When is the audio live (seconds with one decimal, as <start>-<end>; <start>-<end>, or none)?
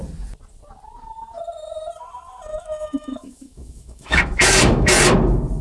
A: 0.0-2.5; 5.0-5.6